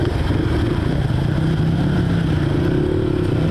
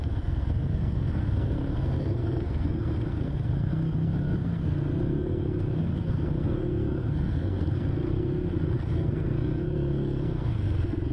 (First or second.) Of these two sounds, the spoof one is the second